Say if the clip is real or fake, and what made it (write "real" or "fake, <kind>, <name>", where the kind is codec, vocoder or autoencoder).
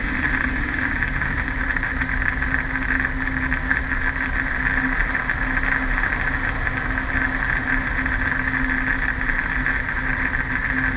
real